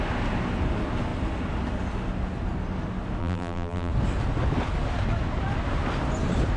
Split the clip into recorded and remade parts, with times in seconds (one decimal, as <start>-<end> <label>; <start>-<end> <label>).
0.0-3.2 recorded; 3.2-3.9 remade; 3.9-6.6 recorded

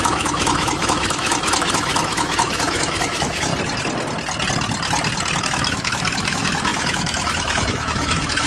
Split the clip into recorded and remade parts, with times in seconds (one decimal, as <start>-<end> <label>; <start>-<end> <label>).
0.0-3.5 remade; 3.5-5.4 recorded; 5.4-8.5 remade